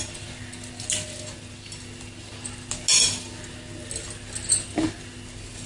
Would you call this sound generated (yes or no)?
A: no